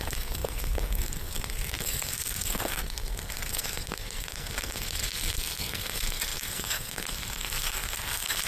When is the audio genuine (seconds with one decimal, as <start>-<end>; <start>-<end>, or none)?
none